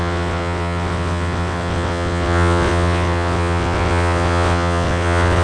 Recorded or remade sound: remade